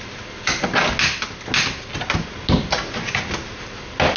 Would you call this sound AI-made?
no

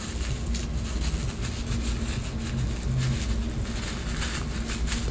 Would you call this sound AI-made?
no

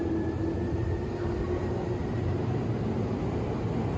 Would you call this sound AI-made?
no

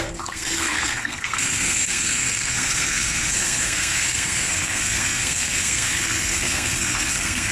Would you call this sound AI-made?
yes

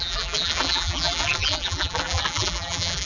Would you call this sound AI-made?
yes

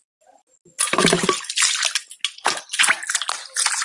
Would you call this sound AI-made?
no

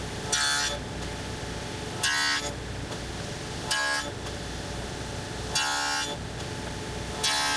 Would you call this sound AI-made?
no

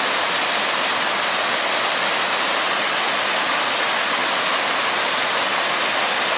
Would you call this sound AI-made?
no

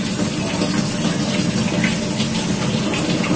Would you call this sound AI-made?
no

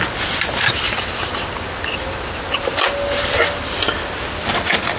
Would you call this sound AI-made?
no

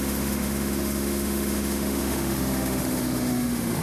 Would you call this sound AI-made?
yes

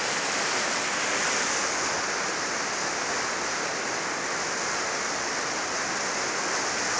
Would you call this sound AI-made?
no